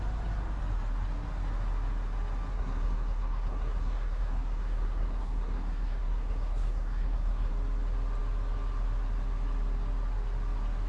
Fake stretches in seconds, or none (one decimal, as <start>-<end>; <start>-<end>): 2.5-7.5